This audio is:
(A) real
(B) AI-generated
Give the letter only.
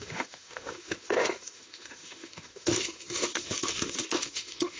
B